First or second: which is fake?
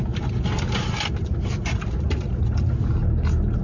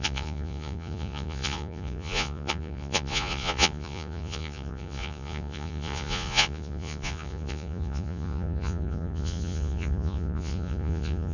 second